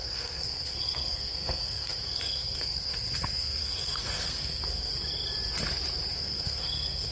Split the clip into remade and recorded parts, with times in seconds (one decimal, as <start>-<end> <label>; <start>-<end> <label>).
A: 0.0-4.9 remade; 4.9-6.1 recorded; 6.1-7.1 remade